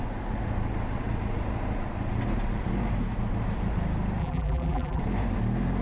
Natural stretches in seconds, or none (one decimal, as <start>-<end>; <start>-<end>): 0.0-4.2; 5.0-5.8